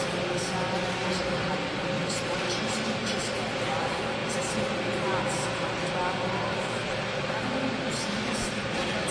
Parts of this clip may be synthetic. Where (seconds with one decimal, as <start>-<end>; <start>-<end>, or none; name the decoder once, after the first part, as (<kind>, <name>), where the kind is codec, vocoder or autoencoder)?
none